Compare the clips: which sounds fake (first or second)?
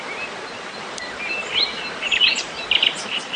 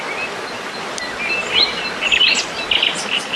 first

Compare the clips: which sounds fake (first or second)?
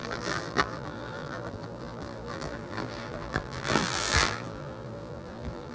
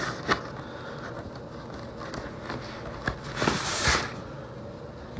first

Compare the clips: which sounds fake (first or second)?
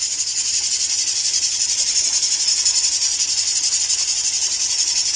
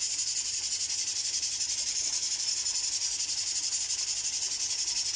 first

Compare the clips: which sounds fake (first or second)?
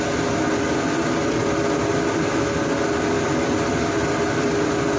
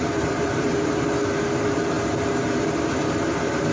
second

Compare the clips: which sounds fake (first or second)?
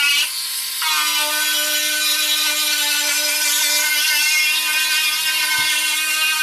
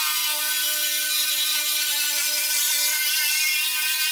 second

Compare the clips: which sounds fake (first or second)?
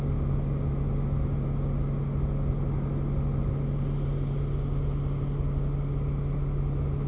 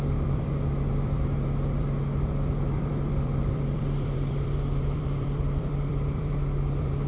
second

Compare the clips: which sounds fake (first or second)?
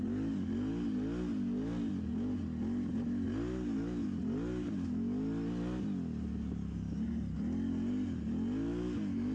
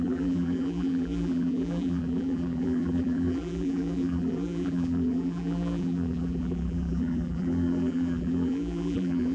second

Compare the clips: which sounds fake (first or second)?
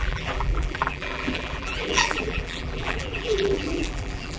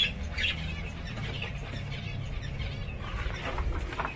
first